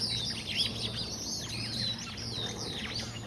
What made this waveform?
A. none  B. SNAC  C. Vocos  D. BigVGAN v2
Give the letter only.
A